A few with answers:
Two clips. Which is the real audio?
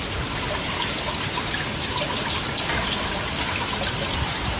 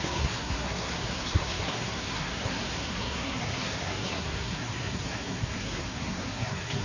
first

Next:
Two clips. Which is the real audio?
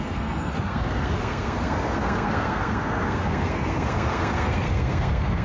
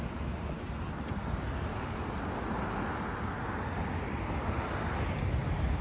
second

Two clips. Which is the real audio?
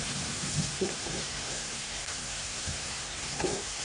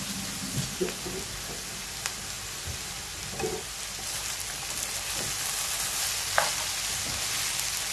second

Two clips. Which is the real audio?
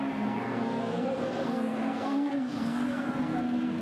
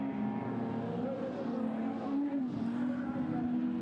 second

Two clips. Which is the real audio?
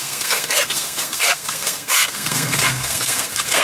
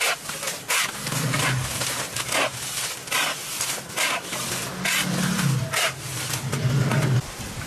second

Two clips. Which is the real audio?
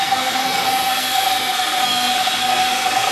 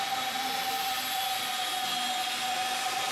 second